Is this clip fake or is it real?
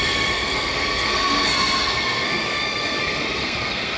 fake